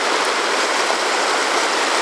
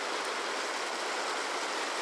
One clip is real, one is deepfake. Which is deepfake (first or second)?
first